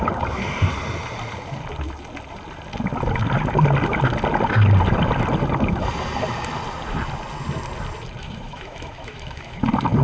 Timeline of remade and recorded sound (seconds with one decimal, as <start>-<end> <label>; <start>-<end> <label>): 0.0-8.2 recorded; 8.2-9.6 remade; 9.6-10.0 recorded